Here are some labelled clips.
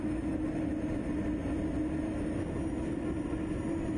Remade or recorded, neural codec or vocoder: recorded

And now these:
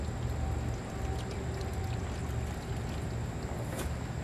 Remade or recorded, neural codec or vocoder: recorded